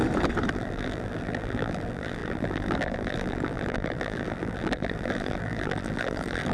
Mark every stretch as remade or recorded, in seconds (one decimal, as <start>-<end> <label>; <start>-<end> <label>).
0.0-0.5 recorded; 0.5-6.5 remade